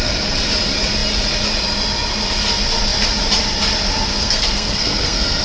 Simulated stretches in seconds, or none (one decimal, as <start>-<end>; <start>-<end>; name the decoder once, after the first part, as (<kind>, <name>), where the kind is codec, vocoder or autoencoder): 4.1-5.4 (codec, SNAC)